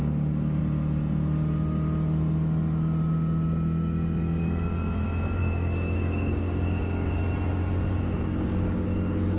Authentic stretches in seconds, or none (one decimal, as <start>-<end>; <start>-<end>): 0.6-5.4; 7.2-7.9